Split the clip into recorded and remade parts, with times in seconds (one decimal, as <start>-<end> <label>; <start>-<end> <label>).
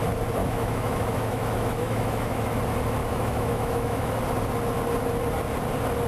0.0-0.4 recorded; 0.4-2.6 remade; 2.6-3.0 recorded; 3.0-4.2 remade; 4.2-6.1 recorded